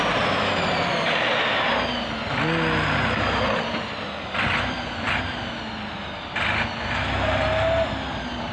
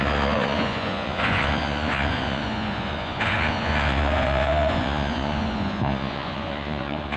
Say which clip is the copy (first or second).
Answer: second